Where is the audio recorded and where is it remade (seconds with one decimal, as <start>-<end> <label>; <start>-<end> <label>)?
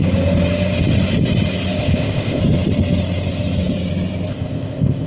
0.0-1.8 recorded; 1.8-2.4 remade; 2.4-4.3 recorded; 4.3-5.1 remade